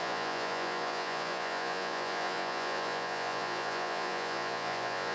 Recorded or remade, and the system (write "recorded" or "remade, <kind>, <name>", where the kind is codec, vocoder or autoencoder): remade, vocoder, Vocos